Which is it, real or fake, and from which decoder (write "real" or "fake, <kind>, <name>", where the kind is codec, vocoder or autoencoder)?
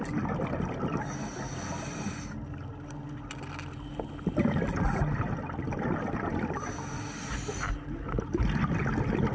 real